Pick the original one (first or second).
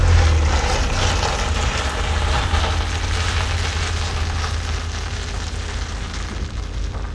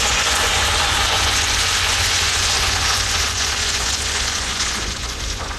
first